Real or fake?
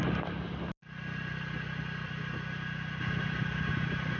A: real